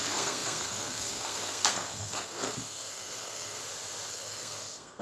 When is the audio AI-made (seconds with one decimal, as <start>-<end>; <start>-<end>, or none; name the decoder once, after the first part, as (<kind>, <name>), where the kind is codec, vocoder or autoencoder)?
0.0-3.6 (codec, SNAC); 4.1-5.0